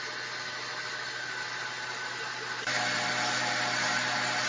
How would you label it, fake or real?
real